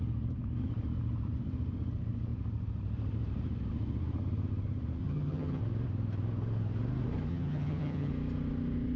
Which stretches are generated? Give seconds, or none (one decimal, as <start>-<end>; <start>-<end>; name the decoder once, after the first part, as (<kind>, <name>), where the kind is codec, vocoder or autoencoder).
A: 5.0-5.6 (vocoder, HiFi-GAN); 7.3-8.1